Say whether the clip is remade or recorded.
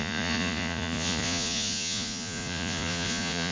remade